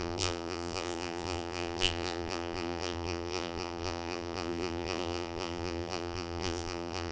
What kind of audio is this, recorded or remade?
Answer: remade